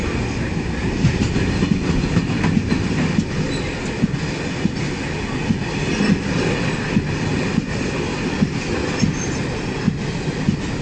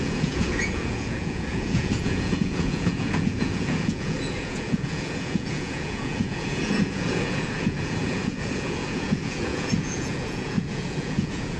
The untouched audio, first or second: first